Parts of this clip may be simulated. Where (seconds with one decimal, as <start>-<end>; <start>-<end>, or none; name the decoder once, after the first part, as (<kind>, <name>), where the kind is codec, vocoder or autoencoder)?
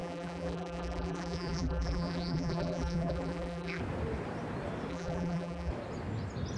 0.0-3.8 (vocoder, BigVGAN v2); 4.9-5.7